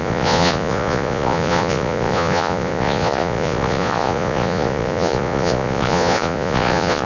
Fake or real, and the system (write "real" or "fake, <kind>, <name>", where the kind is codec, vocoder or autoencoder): fake, vocoder, Vocos